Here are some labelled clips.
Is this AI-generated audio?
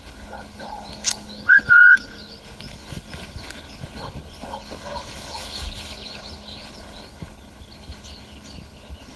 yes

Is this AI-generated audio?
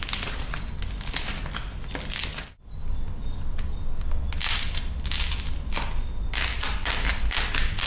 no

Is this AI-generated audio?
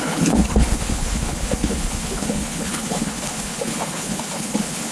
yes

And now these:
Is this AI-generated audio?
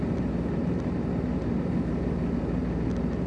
no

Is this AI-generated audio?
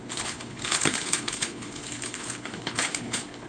yes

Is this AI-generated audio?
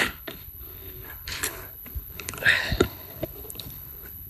yes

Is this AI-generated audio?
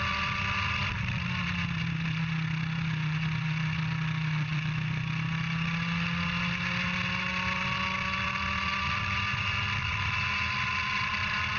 no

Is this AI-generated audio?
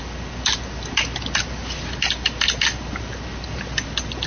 no